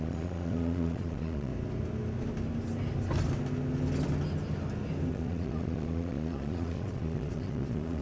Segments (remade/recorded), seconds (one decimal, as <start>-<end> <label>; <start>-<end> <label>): 0.0-1.5 remade; 1.5-5.1 recorded; 5.1-8.0 remade